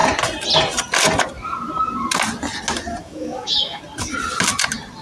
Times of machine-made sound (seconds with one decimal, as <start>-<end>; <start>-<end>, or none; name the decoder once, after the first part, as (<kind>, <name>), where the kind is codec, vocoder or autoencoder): 3.0-3.8 (autoencoder, DAC-VAE)